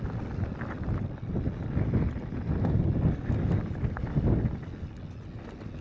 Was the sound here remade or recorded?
recorded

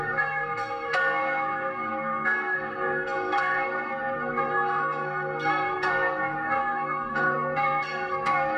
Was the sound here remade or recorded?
remade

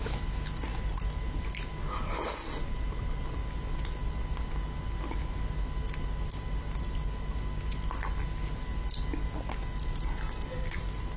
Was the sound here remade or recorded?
recorded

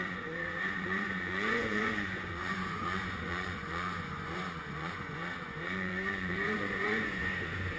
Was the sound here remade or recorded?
remade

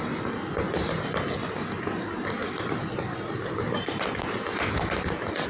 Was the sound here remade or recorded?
recorded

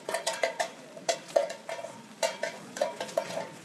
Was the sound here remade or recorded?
remade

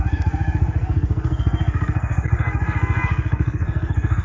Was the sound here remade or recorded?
remade